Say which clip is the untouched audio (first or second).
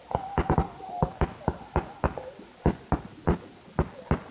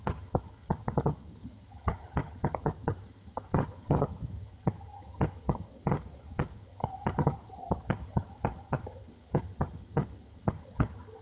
first